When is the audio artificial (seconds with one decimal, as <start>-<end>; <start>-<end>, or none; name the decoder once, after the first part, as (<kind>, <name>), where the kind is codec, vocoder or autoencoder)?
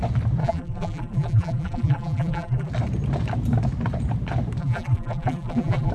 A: 0.4-2.7 (vocoder, BigVGAN v2); 4.6-5.9